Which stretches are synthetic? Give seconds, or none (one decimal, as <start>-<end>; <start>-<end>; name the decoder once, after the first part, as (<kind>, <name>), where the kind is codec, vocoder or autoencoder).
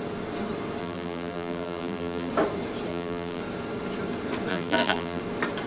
0.8-2.3 (vocoder, BigVGAN v2); 2.9-3.4; 4.5-5.2